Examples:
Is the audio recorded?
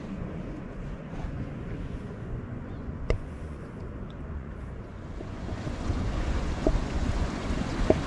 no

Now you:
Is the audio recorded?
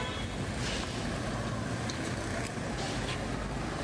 yes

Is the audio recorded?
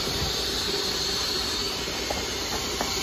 no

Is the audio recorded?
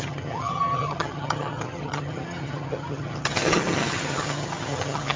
no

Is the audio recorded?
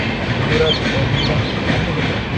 yes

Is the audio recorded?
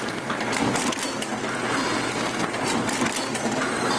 yes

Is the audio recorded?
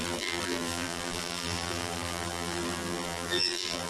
no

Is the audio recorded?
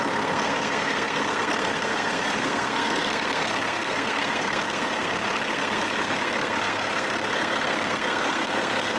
no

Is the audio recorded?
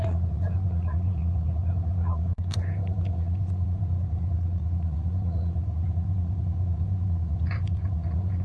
no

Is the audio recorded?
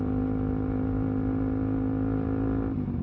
yes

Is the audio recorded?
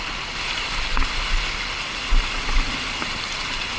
yes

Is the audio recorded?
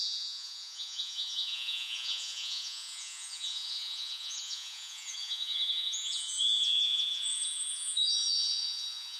no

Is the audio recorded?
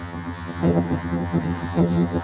no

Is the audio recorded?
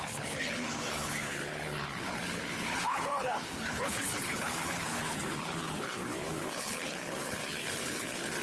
no